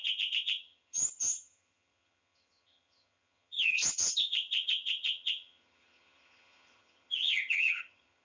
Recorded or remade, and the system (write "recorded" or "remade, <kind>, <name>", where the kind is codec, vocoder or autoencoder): remade, vocoder, HiFi-GAN